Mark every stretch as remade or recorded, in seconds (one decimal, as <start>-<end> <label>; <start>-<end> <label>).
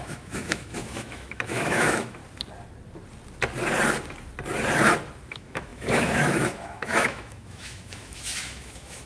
0.0-2.2 remade; 2.2-5.3 recorded; 5.3-9.1 remade